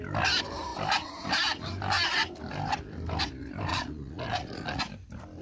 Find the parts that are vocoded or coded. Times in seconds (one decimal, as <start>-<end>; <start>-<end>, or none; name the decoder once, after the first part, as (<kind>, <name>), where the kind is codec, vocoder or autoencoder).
3.7-4.8 (vocoder, Vocos)